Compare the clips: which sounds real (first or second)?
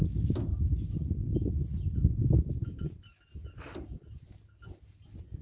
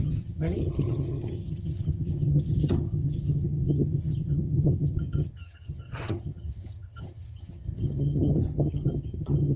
first